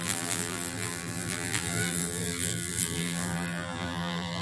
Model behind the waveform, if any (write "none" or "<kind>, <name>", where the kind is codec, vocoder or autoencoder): vocoder, BigVGAN v2